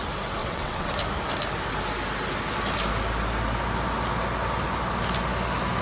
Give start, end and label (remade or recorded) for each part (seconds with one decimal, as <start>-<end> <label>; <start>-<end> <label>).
0.0-0.4 recorded; 0.4-0.9 remade; 0.9-5.8 recorded